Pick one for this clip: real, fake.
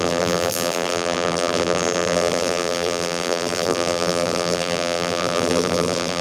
fake